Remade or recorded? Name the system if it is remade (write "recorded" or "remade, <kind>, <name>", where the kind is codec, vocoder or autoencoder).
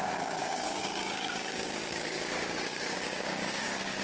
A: remade, codec, DAC